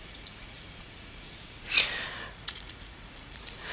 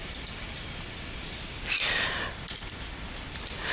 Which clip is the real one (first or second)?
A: second